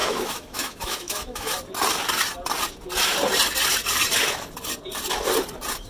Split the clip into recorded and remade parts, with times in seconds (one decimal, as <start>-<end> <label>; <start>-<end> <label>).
0.0-1.5 remade; 1.5-5.9 recorded